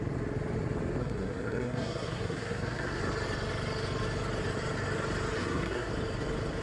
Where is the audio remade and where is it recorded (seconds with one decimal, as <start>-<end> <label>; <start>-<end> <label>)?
0.0-1.0 recorded; 1.0-3.0 remade; 3.0-5.4 recorded; 5.4-5.9 remade; 5.9-6.6 recorded